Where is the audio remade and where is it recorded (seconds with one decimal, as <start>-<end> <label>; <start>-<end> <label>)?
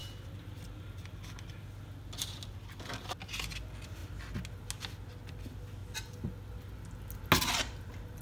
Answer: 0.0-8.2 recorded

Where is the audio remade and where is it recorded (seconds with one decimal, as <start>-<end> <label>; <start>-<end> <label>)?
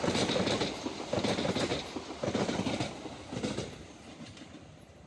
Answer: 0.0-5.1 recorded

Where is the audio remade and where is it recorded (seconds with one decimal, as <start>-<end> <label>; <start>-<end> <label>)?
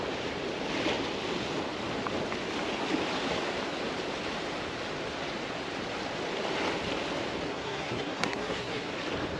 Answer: 0.0-7.5 recorded; 7.5-8.9 remade; 8.9-9.4 recorded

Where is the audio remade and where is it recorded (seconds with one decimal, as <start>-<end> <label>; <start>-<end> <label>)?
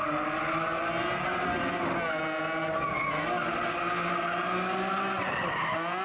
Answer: 0.0-6.0 recorded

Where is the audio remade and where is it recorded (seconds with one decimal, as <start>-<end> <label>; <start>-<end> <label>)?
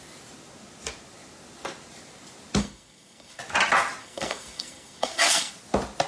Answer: 0.0-2.6 recorded; 2.6-3.4 remade; 3.4-4.0 recorded; 4.0-5.5 remade; 5.5-6.1 recorded